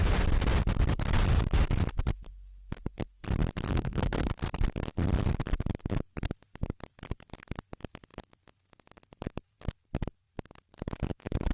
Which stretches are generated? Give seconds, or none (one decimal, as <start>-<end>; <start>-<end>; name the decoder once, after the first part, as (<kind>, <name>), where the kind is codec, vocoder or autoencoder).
3.7-4.3 (codec, SNAC)